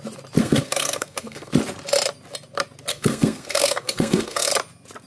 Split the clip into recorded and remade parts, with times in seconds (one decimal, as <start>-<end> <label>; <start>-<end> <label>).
0.0-0.4 recorded; 0.4-1.5 remade; 1.5-2.9 recorded; 2.9-4.5 remade; 4.5-5.1 recorded